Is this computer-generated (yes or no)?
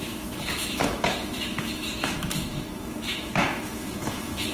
yes